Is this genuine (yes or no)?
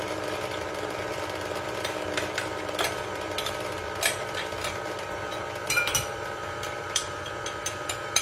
no